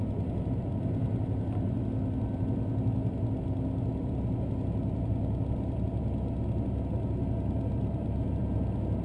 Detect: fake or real real